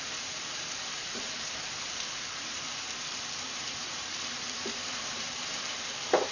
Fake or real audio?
fake